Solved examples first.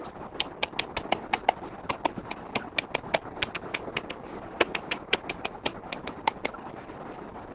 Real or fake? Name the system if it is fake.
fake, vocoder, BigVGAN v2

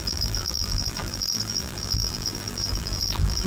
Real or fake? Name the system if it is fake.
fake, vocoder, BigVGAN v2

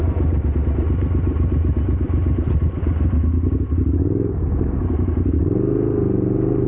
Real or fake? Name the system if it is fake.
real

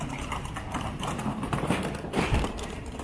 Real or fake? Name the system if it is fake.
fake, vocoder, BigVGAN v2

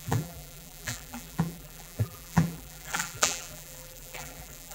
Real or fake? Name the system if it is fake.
fake, vocoder, BigVGAN v2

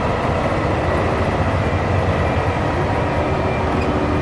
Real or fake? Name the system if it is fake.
real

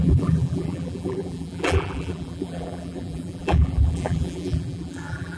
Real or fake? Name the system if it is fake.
fake, vocoder, BigVGAN v2